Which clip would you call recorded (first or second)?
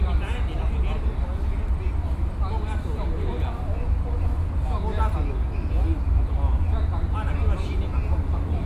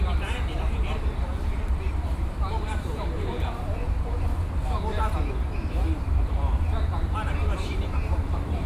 first